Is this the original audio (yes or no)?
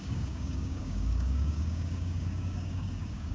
no